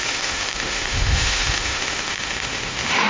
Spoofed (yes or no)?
yes